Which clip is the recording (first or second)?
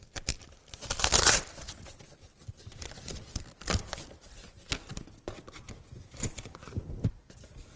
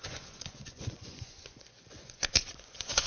first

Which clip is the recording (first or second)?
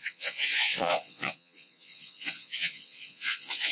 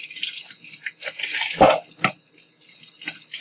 second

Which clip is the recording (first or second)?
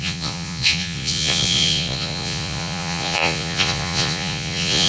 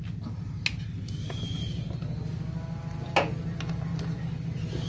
second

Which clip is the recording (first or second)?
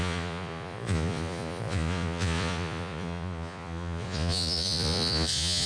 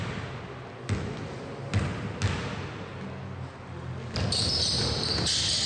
second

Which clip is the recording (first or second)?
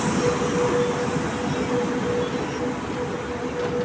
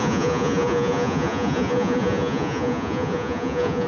first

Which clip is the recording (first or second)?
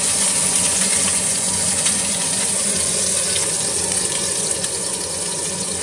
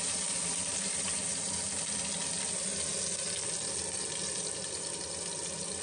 second